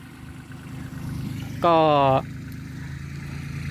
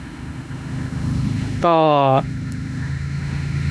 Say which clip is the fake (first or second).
second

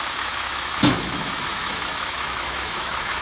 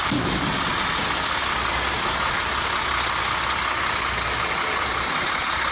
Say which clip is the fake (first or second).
first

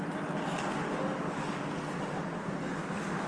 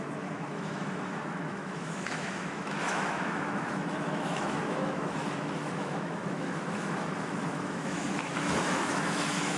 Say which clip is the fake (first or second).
second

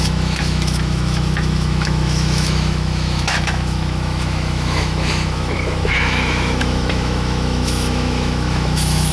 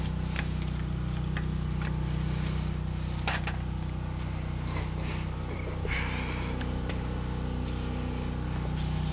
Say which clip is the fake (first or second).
first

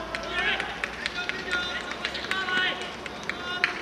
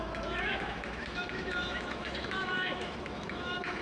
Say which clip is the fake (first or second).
second